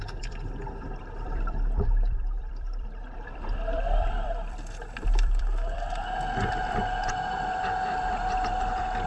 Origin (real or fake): fake